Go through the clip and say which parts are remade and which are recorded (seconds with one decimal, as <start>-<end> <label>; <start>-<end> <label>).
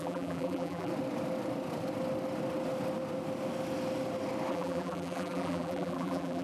0.0-0.9 remade; 0.9-4.5 recorded; 4.5-6.4 remade